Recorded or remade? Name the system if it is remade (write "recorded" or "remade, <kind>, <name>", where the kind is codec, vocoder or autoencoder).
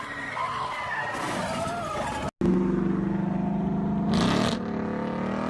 recorded